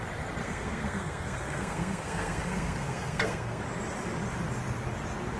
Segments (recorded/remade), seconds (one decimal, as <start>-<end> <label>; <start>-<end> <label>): 0.0-0.4 recorded; 0.4-3.6 remade; 3.6-5.4 recorded

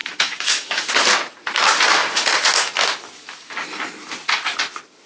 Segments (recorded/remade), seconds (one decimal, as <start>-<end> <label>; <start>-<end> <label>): 0.0-1.0 remade; 1.0-5.1 recorded